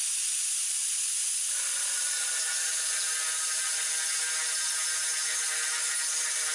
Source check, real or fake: real